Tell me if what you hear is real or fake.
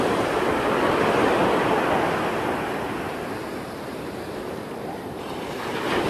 real